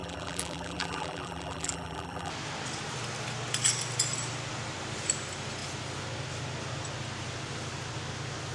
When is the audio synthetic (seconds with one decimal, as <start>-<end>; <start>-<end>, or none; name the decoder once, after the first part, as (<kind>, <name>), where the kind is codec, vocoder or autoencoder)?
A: 0.0-2.3 (vocoder, BigVGAN v2)